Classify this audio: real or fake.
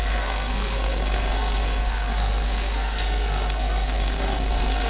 fake